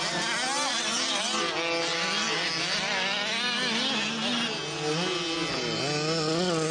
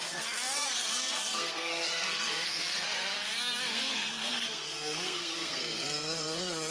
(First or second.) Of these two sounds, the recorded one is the first